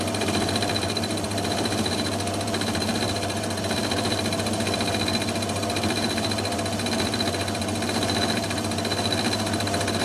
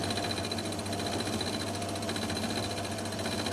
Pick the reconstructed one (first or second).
first